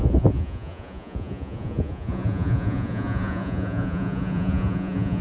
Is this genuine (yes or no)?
no